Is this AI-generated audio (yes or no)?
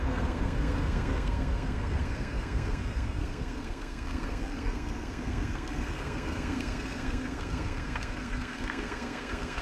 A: yes